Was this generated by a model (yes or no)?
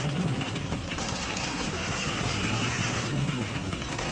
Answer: yes